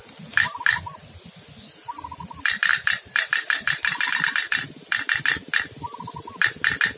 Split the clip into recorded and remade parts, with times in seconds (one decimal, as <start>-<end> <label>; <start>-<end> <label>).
0.0-2.7 recorded; 2.7-4.0 remade; 4.0-7.0 recorded